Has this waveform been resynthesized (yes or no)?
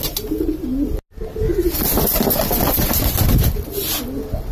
no